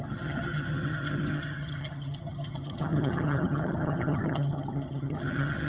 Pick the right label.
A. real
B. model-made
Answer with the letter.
B